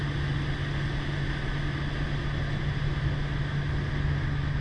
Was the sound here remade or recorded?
recorded